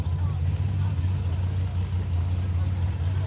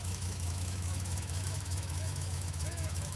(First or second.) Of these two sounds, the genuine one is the first